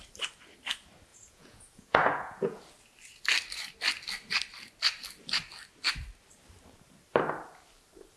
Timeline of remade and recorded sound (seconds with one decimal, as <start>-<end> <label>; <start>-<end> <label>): 0.0-1.1 recorded; 1.1-2.6 remade; 2.6-8.2 recorded